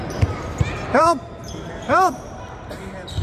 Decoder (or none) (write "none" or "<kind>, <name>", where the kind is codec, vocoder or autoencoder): vocoder, BigVGAN v2